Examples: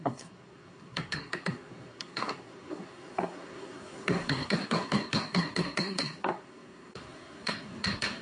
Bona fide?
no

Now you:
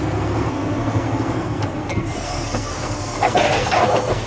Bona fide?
no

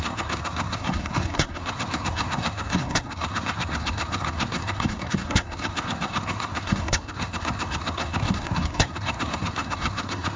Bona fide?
no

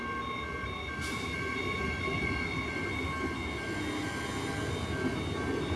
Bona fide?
yes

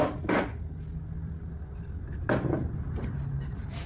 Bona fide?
yes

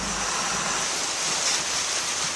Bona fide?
yes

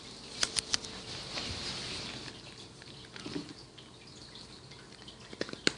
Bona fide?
yes